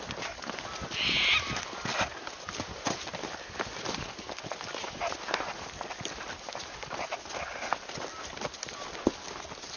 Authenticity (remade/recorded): recorded